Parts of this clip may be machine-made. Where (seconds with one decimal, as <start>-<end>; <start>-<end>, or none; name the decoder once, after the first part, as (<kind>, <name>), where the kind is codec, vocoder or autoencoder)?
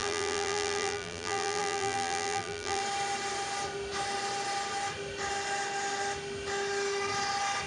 0.0-2.8 (vocoder, BigVGAN v2)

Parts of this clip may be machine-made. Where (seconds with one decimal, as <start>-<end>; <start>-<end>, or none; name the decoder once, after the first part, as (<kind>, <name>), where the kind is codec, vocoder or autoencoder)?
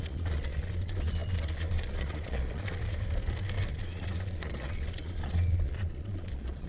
0.0-2.8 (vocoder, Vocos); 3.7-6.7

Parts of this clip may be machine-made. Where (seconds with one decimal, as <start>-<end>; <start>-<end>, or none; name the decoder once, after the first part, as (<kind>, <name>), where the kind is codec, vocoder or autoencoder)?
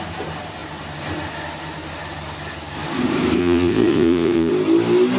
3.4-4.5 (vocoder, Vocos)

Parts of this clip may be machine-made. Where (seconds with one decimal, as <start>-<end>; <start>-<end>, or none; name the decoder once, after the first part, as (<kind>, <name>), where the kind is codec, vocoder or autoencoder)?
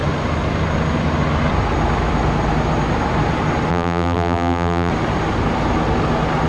3.7-4.9 (vocoder, BigVGAN v2)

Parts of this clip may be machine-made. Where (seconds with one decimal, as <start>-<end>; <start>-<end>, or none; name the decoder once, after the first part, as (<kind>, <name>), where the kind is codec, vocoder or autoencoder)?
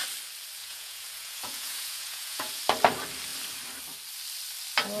0.6-2.6 (vocoder, Vocos)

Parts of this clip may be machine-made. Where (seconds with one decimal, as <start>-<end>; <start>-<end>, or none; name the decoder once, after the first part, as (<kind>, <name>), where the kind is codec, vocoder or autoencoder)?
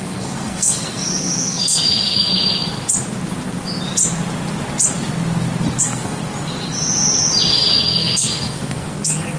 0.0-2.3 (codec, SNAC); 5.8-6.2; 7.5-9.4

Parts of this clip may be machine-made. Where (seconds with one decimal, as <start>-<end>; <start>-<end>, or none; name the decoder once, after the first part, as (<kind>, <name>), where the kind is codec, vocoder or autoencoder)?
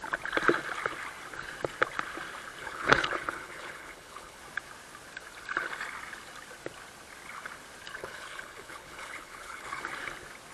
2.6-4.4 (codec, HILCodec); 8.0-9.8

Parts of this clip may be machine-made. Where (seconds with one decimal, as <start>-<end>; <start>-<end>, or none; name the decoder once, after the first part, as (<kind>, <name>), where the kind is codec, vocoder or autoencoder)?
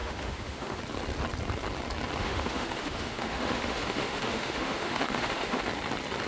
0.0-0.8 (autoencoder, DAC-VAE); 2.2-5.6